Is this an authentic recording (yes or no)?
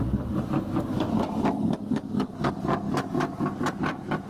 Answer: no